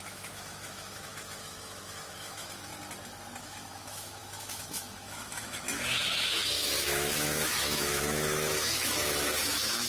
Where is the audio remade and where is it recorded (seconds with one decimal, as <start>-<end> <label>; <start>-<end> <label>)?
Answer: 0.0-2.7 remade; 2.7-3.4 recorded; 3.4-9.9 remade